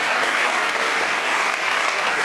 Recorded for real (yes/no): no